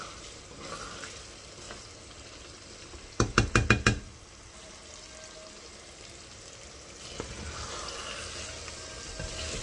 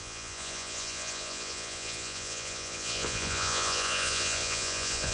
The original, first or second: first